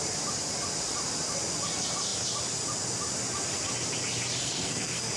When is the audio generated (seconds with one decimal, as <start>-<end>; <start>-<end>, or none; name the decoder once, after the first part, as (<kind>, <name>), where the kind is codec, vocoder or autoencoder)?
4.4-5.2 (codec, SNAC)